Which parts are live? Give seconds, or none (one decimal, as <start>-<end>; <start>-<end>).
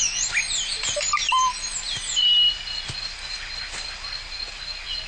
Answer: 0.0-5.1